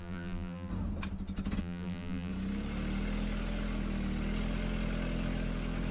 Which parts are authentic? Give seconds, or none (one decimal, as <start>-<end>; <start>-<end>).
0.7-1.6; 2.3-5.9